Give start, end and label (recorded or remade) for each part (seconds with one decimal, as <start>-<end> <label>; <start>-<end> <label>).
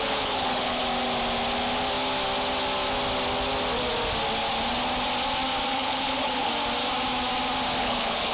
0.0-0.8 remade; 0.8-5.7 recorded; 5.7-6.5 remade; 6.5-7.8 recorded; 7.8-8.3 remade